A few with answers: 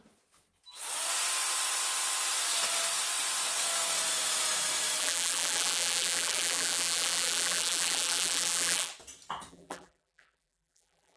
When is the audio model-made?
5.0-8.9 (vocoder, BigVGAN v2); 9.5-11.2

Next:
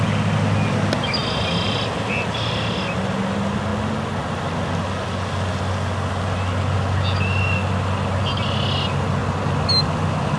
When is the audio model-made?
none

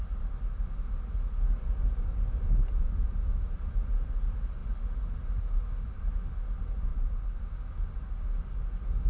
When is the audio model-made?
6.9-7.4 (vocoder, BigVGAN v2)

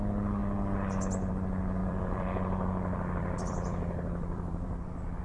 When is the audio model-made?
1.8-5.2 (vocoder, BigVGAN v2)

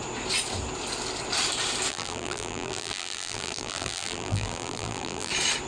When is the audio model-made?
1.9-5.3 (vocoder, BigVGAN v2)

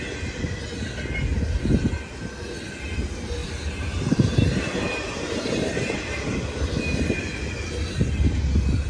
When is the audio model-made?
3.4-6.7 (vocoder, BigVGAN v2)

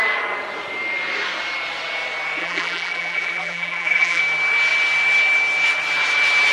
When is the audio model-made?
2.4-4.2 (vocoder, BigVGAN v2)